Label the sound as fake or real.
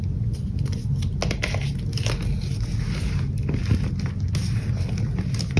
real